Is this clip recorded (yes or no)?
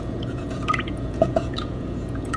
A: no